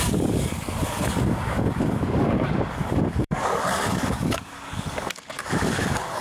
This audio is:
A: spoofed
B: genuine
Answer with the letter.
A